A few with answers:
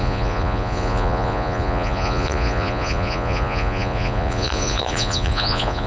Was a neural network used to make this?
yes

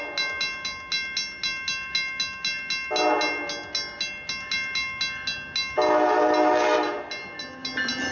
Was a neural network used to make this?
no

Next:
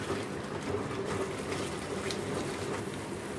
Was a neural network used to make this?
no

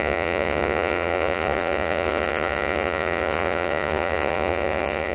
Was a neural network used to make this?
yes